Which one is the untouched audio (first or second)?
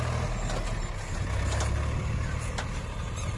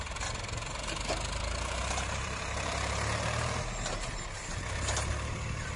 first